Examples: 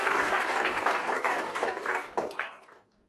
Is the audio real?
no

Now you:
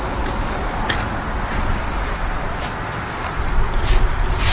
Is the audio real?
yes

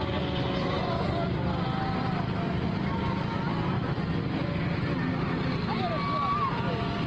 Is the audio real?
yes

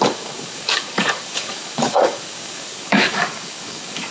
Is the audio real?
no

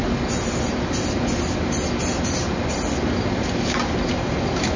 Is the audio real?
yes